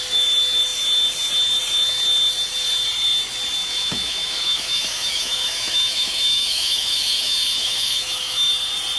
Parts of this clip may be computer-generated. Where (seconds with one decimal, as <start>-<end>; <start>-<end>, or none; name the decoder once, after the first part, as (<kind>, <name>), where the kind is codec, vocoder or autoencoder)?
3.6-8.5 (autoencoder, DAC-VAE)